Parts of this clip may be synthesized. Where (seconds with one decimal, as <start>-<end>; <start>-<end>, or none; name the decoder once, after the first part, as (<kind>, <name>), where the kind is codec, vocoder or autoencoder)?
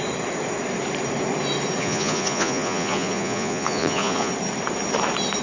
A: 1.8-4.3 (vocoder, Vocos)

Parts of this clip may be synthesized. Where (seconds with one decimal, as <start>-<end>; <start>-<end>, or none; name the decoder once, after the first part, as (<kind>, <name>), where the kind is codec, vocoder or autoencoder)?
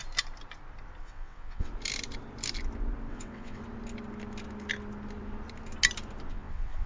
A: 1.0-1.7 (vocoder, WaveNeXt); 3.1-3.6; 6.3-6.9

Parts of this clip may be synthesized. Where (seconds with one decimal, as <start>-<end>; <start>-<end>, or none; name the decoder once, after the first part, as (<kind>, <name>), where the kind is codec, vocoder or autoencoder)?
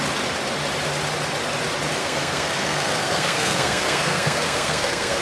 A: 2.0-5.2 (codec, SNAC)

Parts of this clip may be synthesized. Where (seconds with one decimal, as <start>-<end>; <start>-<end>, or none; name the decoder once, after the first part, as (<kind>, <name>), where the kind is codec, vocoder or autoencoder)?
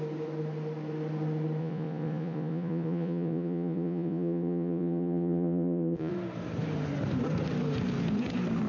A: 1.6-6.1 (vocoder, Vocos)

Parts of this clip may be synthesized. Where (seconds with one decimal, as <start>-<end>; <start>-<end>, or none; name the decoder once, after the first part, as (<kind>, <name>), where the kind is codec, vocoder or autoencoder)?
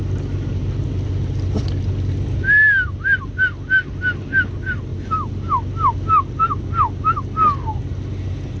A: none